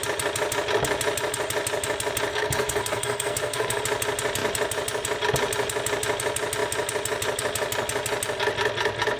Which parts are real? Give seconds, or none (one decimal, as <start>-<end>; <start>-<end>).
0.0-2.3; 3.8-9.2